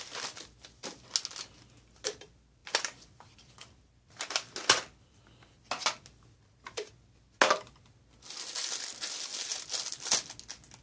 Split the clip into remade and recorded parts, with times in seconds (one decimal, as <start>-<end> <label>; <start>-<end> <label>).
0.0-2.6 recorded; 2.6-3.5 remade; 3.5-10.8 recorded